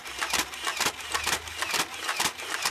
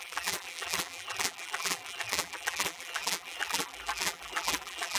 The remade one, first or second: second